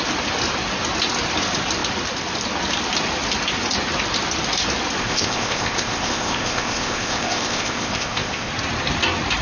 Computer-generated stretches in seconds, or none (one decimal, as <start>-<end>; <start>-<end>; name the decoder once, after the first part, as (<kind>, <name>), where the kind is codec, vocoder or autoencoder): 5.0-8.5 (codec, ZipCodec)